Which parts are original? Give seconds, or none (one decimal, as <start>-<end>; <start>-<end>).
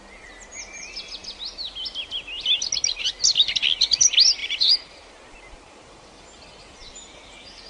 0.0-4.4